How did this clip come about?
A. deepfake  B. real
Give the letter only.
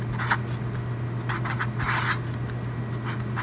B